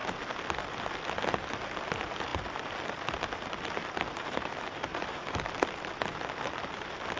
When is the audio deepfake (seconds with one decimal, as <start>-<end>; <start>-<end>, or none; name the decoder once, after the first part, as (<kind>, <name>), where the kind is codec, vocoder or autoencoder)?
3.8-4.5 (vocoder, BigVGAN v2); 4.9-5.5